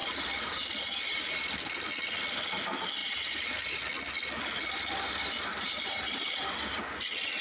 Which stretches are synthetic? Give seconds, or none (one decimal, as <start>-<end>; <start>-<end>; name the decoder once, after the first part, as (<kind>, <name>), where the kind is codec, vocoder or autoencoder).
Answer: 0.0-1.6 (vocoder, BigVGAN v2); 3.0-3.8; 5.5-6.2